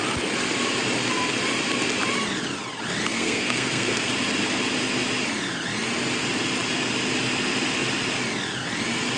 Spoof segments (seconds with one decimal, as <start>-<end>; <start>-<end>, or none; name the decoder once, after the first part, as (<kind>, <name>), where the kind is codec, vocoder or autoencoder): 3.1-4.1 (codec, SNAC)